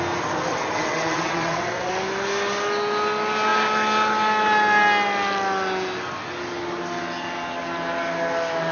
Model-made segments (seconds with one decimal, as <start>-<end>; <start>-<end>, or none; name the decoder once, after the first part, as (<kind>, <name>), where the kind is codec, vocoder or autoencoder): 0.5-1.9 (vocoder, WaveNeXt)